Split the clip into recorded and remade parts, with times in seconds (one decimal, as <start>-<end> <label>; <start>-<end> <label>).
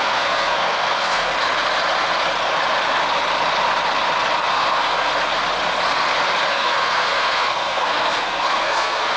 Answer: 0.0-1.3 remade; 1.3-4.5 recorded; 4.5-5.1 remade; 5.1-6.5 recorded; 6.5-9.2 remade